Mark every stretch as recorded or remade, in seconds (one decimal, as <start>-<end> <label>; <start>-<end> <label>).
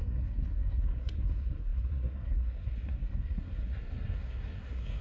0.0-5.0 remade